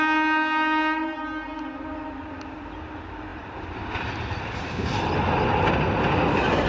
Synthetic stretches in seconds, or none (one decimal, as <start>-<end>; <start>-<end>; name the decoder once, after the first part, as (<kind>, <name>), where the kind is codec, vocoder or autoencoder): none